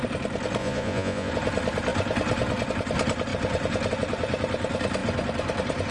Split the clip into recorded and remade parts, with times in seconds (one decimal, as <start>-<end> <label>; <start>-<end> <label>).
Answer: 0.0-0.6 recorded; 0.6-1.3 remade; 1.3-5.9 recorded

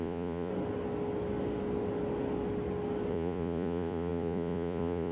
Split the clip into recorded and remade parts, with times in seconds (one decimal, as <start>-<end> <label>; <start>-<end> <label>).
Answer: 0.0-0.5 remade; 0.5-3.1 recorded; 3.1-5.1 remade

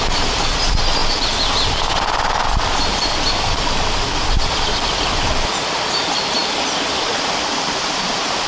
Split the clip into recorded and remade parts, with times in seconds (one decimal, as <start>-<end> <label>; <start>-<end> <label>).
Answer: 0.0-8.5 recorded

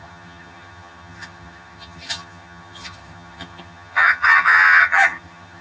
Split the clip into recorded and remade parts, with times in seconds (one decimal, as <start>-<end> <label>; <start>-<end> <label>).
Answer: 0.0-5.6 remade

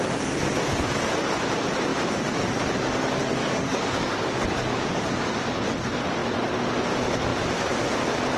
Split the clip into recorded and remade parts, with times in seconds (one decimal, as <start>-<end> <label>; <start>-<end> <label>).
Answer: 0.0-3.4 recorded; 3.4-5.4 remade; 5.4-8.4 recorded